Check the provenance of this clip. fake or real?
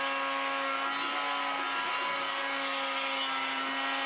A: real